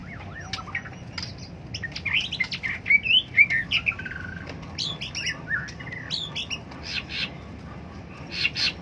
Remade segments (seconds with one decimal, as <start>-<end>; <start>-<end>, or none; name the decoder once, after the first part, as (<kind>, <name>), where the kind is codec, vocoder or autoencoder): none